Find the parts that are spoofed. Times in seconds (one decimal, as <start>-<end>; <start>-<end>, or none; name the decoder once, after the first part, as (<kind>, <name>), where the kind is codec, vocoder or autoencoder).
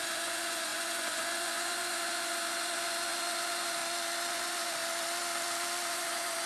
0.0-3.8 (vocoder, Vocos); 4.3-4.8; 5.9-6.5